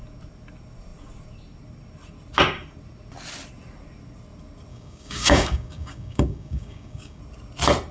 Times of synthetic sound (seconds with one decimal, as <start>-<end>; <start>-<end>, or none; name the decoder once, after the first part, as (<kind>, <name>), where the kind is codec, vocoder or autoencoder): 4.7-7.2 (codec, DAC)